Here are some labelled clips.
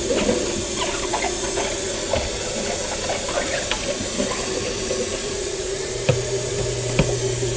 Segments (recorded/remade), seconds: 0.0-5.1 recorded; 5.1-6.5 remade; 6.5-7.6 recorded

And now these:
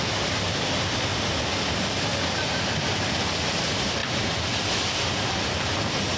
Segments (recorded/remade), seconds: 0.0-6.2 recorded

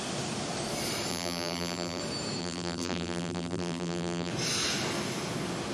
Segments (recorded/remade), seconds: 0.0-1.1 recorded; 1.1-2.0 remade; 2.0-2.4 recorded; 2.4-4.3 remade; 4.3-5.7 recorded

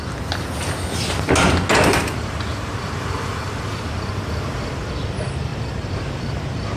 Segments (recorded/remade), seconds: 0.0-1.9 recorded; 1.9-3.7 remade; 3.7-5.5 recorded; 5.5-6.8 remade

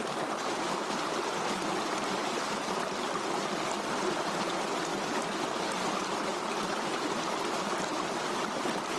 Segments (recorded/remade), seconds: 0.0-2.2 recorded; 2.2-3.1 remade; 3.1-9.0 recorded

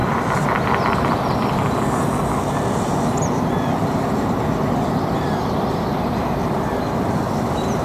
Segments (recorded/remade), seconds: 0.0-1.7 remade; 1.7-7.8 recorded

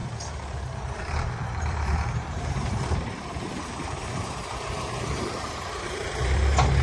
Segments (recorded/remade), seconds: 0.0-6.1 remade; 6.1-6.8 recorded